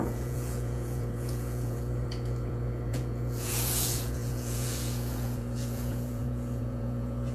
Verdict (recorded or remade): remade